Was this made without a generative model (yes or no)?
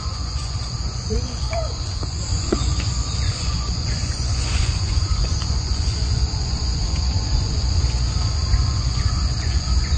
no